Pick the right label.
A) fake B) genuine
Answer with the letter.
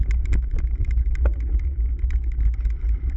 B